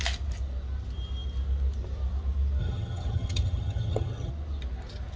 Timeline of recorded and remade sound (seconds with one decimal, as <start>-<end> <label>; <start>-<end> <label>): 0.0-2.6 recorded; 2.6-4.3 remade; 4.3-5.2 recorded